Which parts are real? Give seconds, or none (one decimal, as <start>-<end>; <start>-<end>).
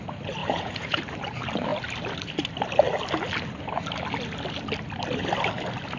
0.0-0.4; 1.0-6.0